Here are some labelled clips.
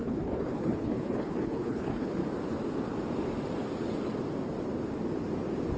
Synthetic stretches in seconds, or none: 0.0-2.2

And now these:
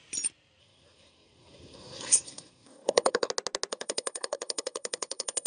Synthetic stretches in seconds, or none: 0.6-3.3; 3.7-5.5

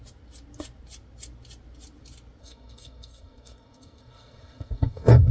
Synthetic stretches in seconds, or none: 2.4-5.3

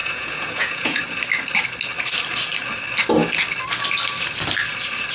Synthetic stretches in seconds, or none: 0.0-1.0

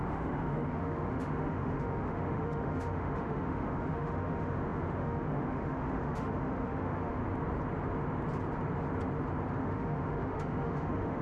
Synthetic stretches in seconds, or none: 0.0-7.2; 9.6-11.2

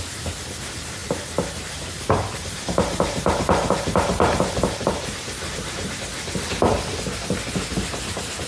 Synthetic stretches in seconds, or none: 1.0-5.9

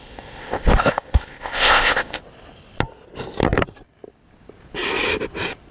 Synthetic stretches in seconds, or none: 0.0-2.2